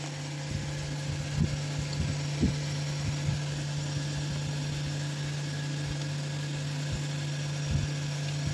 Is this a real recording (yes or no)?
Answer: yes